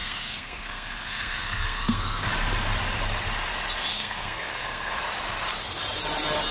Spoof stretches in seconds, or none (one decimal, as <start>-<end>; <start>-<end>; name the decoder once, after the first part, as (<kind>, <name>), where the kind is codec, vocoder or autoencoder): 0.0-2.3 (codec, SNAC); 3.9-5.0